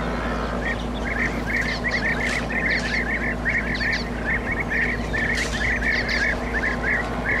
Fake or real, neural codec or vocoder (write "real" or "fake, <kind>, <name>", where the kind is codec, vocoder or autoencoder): real